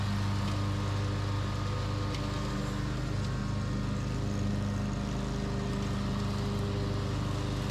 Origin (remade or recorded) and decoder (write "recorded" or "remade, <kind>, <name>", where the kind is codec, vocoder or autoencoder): recorded